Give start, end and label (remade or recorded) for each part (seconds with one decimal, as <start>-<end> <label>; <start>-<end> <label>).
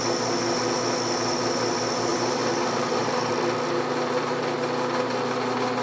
0.0-2.1 recorded; 2.1-3.3 remade; 3.3-3.9 recorded; 3.9-4.4 remade; 4.4-5.8 recorded